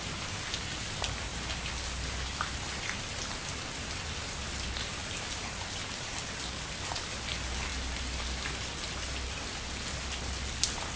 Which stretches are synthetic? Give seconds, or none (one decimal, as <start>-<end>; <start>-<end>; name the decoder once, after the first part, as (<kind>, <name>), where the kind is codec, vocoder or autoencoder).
4.9-5.6 (vocoder, BigVGAN v2)